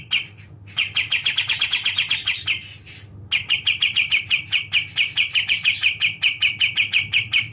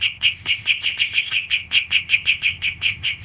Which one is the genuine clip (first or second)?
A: first